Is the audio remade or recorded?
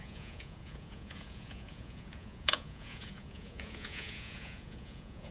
remade